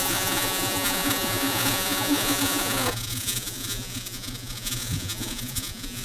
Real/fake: fake